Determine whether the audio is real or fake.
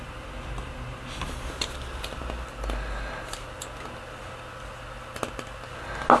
real